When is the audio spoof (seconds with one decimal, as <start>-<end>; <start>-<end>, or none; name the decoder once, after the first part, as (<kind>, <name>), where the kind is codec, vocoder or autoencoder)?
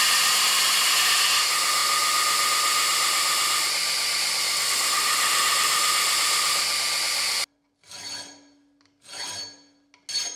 none